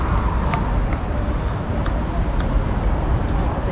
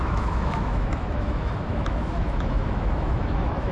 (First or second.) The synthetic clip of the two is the second